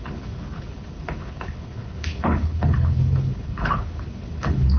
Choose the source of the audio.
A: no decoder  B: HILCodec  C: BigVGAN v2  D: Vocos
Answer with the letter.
B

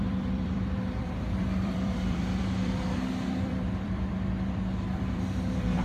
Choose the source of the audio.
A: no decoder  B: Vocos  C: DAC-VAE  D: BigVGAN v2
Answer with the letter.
D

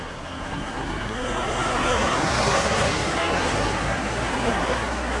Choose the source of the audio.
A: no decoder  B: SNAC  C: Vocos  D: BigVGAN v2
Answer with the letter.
B